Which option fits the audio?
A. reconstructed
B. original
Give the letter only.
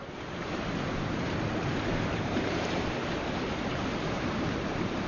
A